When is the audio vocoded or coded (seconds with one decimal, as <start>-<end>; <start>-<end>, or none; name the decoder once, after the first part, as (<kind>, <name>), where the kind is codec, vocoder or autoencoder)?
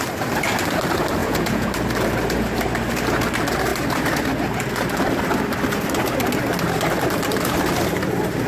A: 1.2-1.7 (vocoder, Vocos)